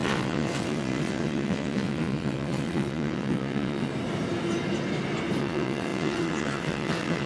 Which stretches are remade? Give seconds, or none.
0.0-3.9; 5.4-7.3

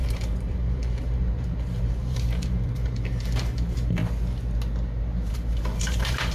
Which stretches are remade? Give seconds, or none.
0.0-4.0; 5.3-6.3

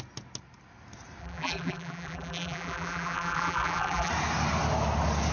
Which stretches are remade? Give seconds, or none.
1.2-4.1

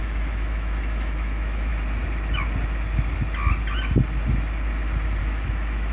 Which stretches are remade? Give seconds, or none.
0.0-1.7; 5.2-5.9